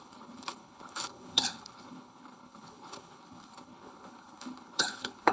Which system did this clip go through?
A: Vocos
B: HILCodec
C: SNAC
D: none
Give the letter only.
B